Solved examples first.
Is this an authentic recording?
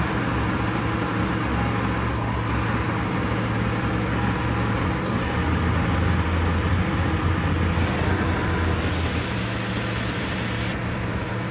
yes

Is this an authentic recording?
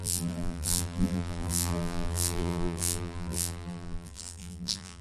no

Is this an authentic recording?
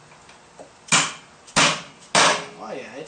yes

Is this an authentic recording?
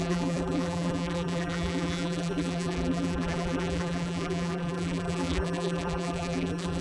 no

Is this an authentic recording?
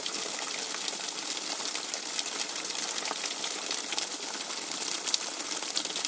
yes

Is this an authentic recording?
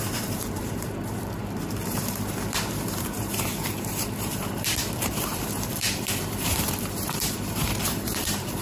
no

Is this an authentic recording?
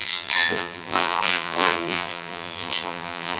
no